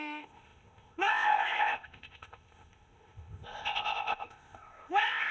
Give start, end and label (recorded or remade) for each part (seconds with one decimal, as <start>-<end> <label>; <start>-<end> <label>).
0.0-5.3 remade